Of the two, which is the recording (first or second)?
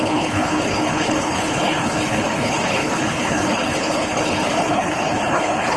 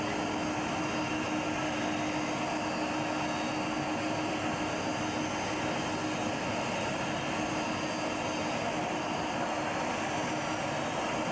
second